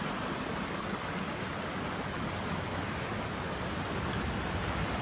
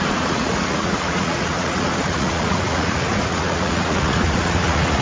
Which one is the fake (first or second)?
second